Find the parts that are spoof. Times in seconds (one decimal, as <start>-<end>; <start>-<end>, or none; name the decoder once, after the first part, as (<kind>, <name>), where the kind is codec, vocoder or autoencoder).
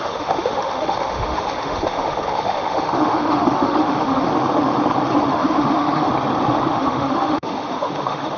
0.0-4.3 (autoencoder, DAC-VAE); 5.3-6.1; 6.7-8.4